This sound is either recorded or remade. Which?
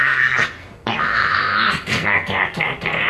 remade